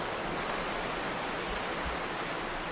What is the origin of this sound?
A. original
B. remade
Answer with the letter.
A